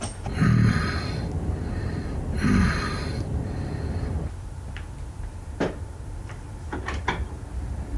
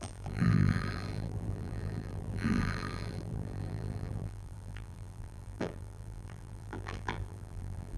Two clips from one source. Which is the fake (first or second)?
second